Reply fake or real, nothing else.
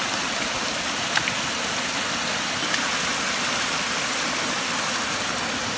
real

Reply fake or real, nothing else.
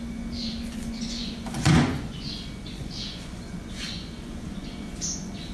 fake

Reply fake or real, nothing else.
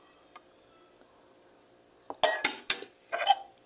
real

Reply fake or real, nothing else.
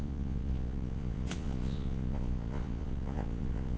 fake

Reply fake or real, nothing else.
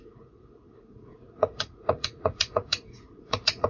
fake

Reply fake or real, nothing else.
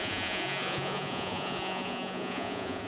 fake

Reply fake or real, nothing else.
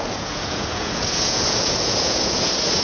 fake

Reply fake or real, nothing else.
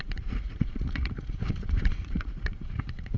fake